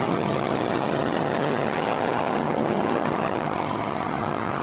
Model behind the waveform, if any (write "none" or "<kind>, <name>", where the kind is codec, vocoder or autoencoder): vocoder, HiFi-GAN